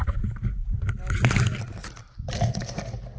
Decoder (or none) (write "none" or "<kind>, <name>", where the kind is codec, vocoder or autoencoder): none